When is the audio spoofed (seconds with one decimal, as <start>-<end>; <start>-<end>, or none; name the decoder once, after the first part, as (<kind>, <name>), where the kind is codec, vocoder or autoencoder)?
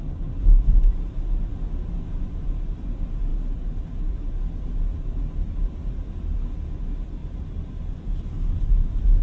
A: none